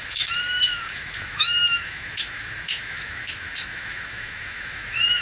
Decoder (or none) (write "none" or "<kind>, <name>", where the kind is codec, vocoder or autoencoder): autoencoder, DAC-VAE